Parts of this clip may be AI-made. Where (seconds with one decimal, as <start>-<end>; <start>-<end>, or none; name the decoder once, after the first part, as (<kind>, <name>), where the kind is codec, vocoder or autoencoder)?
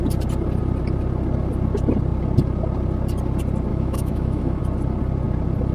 3.7-4.6 (autoencoder, DAC-VAE)